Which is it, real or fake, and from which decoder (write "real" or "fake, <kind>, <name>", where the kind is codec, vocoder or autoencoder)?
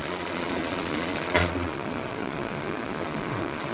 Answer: fake, vocoder, Vocos